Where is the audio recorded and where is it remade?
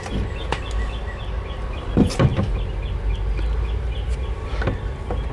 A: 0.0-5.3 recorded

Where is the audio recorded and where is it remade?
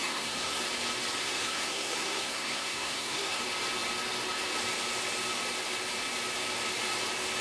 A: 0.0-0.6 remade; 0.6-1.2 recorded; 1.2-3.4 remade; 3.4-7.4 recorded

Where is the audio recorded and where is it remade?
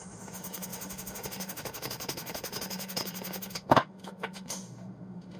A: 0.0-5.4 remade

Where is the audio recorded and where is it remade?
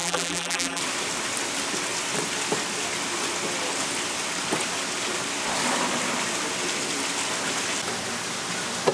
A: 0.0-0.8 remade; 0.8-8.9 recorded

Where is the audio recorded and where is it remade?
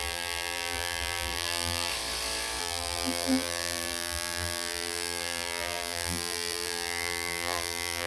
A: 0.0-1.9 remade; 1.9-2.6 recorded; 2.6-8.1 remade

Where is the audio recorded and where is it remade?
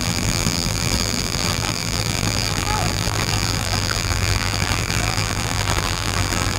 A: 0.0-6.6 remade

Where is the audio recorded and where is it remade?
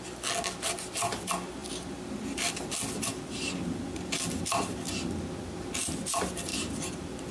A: 0.0-1.6 recorded; 1.6-3.8 remade; 3.8-6.5 recorded; 6.5-7.3 remade